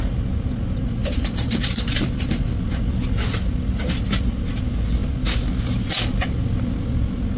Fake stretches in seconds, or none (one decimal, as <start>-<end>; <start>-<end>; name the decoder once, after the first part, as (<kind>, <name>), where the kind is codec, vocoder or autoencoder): 1.0-2.6 (vocoder, BigVGAN v2)